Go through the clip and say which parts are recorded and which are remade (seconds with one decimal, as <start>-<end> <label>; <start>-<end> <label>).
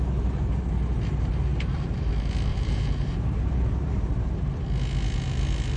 0.0-1.5 recorded; 1.5-2.1 remade; 2.1-2.5 recorded; 2.5-4.1 remade; 4.1-5.8 recorded